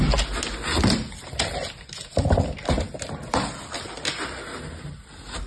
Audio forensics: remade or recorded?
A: recorded